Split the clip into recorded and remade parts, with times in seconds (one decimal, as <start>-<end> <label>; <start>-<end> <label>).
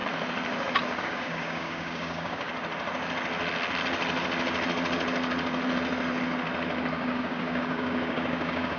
0.0-1.0 recorded; 1.0-2.5 remade; 2.5-6.9 recorded; 6.9-8.8 remade